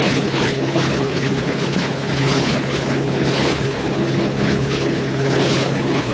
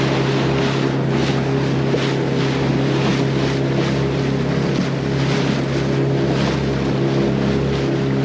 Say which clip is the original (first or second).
second